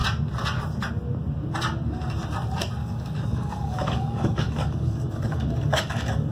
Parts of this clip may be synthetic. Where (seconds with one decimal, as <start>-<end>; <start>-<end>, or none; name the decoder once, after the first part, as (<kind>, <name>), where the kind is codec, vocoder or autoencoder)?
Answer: 2.8-6.3 (codec, DAC)